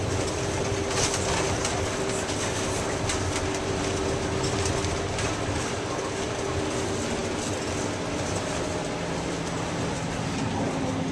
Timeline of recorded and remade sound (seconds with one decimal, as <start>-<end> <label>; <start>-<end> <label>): 0.0-11.1 recorded